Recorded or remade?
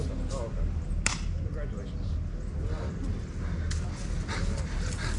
recorded